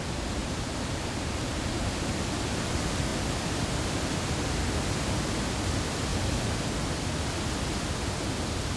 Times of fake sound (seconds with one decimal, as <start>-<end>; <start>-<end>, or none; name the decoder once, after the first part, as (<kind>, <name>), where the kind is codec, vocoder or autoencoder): 0.4-1.7 (vocoder, BigVGAN v2); 6.1-7.3